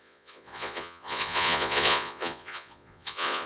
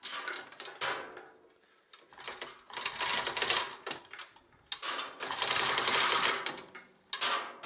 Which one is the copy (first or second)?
first